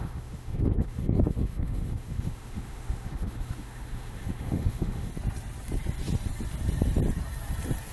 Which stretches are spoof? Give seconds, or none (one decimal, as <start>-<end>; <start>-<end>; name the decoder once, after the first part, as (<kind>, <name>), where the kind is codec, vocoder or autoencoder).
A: 0.0-5.1 (autoencoder, DAC-VAE)